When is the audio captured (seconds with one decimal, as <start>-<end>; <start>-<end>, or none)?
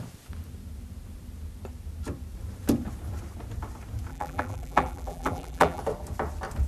0.0-4.1; 5.8-6.7